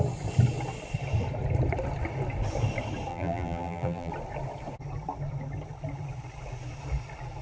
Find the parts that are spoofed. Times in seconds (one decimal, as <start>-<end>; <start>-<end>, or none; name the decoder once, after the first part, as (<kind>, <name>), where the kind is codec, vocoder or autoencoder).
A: 3.1-4.1 (vocoder, BigVGAN v2)